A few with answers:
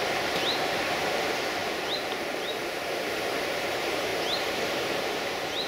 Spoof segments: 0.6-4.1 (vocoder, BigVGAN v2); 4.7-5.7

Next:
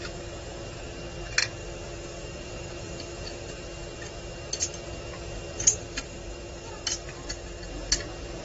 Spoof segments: 1.6-3.5 (vocoder, BigVGAN v2); 5.7-7.7

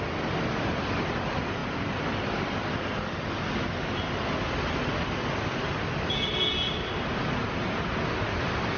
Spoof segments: 7.4-8.0 (vocoder, BigVGAN v2)

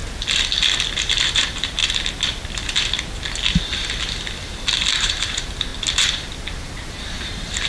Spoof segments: 1.3-1.8 (vocoder, BigVGAN v2); 4.9-5.7; 7.0-7.7